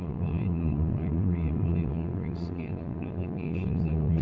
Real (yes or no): no